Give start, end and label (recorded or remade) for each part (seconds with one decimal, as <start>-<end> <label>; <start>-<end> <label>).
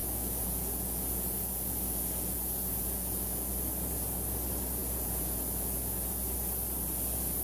0.0-3.4 remade; 3.4-4.8 recorded; 4.8-6.1 remade; 6.1-7.4 recorded